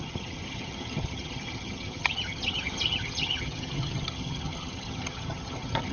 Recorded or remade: remade